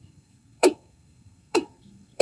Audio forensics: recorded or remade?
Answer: remade